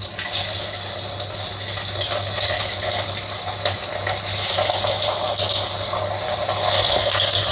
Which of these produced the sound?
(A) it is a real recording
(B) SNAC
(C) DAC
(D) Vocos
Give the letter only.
A